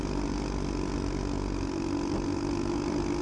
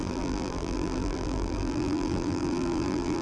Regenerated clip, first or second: second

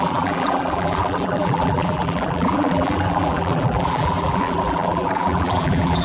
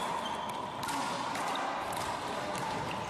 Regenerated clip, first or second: first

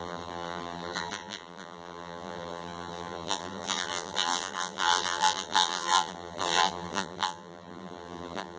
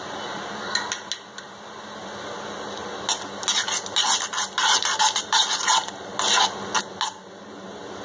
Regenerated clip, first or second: first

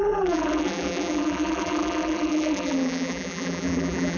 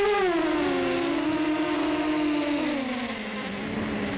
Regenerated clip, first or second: first